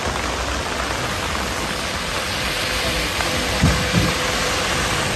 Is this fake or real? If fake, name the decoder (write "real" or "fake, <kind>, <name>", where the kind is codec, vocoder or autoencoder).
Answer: real